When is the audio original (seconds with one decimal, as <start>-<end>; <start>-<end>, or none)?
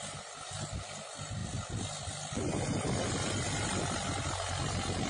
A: 0.0-5.1